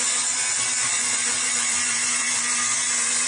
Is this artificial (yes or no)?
yes